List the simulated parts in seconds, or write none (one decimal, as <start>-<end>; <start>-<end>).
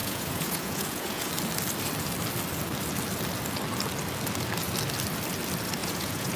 0.0-1.3; 5.8-6.4